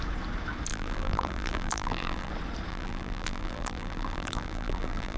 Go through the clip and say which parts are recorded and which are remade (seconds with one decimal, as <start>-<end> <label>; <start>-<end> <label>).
0.0-0.7 recorded; 0.7-2.3 remade; 2.3-2.7 recorded; 2.7-5.2 remade